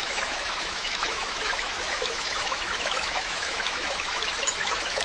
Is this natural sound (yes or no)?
no